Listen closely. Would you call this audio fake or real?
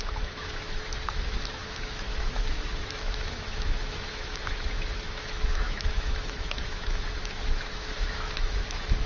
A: fake